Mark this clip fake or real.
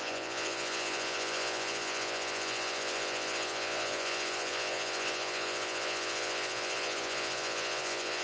fake